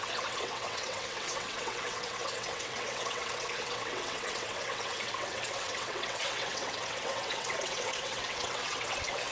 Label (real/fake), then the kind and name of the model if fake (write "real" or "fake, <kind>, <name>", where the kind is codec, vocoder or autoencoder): fake, vocoder, WaveNeXt